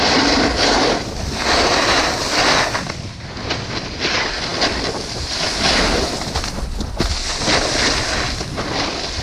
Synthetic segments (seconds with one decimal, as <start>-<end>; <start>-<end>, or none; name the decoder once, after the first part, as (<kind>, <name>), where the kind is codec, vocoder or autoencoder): none